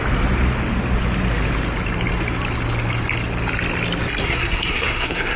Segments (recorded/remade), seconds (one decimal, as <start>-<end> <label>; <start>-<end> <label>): 0.0-4.2 recorded; 4.2-5.4 remade